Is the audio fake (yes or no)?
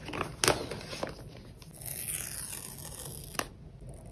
no